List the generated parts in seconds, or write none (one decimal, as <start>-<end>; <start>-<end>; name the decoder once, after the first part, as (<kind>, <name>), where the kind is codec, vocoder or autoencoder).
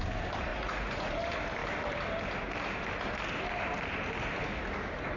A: 0.5-1.2 (vocoder, Vocos)